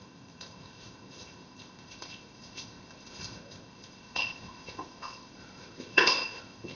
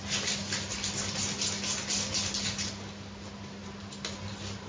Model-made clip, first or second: first